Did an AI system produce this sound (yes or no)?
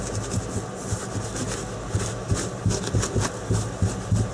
no